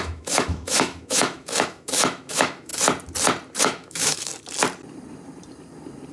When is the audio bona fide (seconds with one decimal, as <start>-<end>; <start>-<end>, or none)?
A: 2.7-3.6; 4.3-6.1